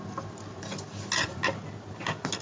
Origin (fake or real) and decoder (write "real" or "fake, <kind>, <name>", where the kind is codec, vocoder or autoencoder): real